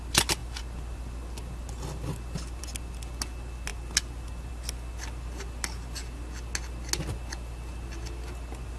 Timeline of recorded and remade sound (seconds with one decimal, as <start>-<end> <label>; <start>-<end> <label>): 0.0-8.8 recorded